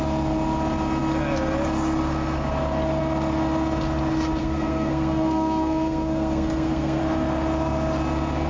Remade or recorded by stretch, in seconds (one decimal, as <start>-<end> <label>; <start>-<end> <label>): 0.0-4.4 recorded; 4.4-7.0 remade; 7.0-8.5 recorded

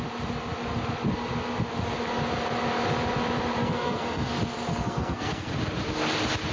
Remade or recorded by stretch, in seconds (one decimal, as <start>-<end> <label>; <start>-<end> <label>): 0.0-3.6 recorded; 3.6-4.3 remade; 4.3-4.7 recorded; 4.7-5.5 remade; 5.5-6.5 recorded

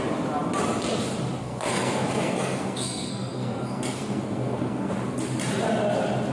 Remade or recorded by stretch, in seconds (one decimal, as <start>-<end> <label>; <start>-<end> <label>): 0.0-1.4 recorded; 1.4-4.9 remade; 4.9-6.3 recorded

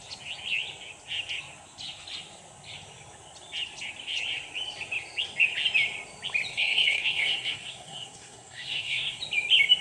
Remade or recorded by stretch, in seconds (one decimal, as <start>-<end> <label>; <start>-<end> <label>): 0.0-6.5 recorded; 6.5-9.2 remade; 9.2-9.8 recorded

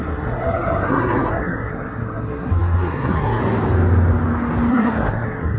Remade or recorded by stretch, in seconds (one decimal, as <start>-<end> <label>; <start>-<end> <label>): 0.0-3.4 remade; 3.4-4.7 recorded; 4.7-5.6 remade

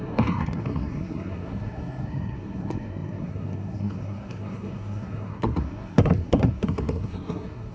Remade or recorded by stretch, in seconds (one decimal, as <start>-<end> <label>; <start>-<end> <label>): 0.0-7.7 remade

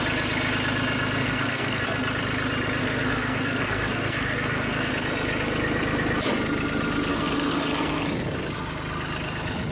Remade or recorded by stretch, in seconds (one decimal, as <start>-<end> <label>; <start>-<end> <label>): 0.0-1.2 recorded; 1.2-1.8 remade; 1.8-2.8 recorded; 2.8-4.9 remade; 4.9-7.1 recorded; 7.1-8.1 remade; 8.1-9.7 recorded

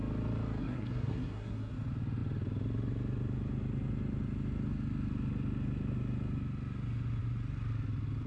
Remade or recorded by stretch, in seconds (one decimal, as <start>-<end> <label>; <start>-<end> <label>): 0.0-0.6 recorded; 0.6-1.7 remade; 1.7-8.3 recorded